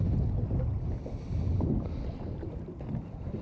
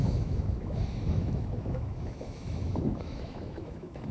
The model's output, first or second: second